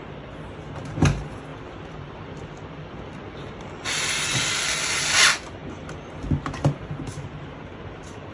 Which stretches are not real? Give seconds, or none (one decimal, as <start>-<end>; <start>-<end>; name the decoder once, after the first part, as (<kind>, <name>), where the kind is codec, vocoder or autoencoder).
1.5-3.7 (vocoder, BigVGAN v2)